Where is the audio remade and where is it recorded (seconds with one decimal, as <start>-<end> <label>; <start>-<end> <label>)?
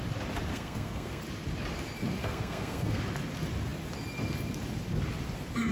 0.0-0.5 recorded; 0.5-1.2 remade; 1.2-2.2 recorded; 2.2-3.0 remade; 3.0-5.7 recorded